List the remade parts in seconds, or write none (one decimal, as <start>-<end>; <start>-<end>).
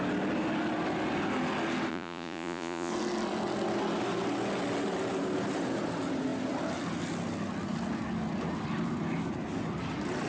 1.9-2.9